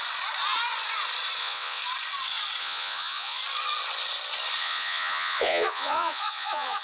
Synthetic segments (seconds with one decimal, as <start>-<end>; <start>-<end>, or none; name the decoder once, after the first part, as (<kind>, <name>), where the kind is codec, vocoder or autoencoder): 1.4-1.8 (vocoder, Vocos); 2.6-3.4; 4.6-6.8